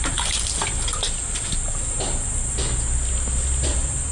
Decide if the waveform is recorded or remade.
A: recorded